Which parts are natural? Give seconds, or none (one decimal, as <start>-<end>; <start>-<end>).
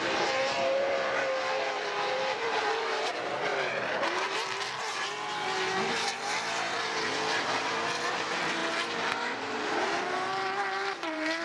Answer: 3.5-8.1; 8.6-9.6